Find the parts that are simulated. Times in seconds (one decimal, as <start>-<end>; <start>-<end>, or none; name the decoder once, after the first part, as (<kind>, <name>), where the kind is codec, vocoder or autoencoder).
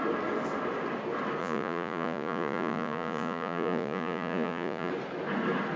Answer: 1.4-4.9 (vocoder, Vocos)